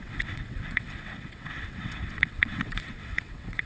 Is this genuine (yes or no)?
no